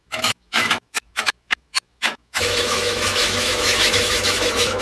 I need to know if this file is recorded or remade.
remade